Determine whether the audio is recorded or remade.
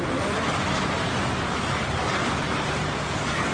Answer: recorded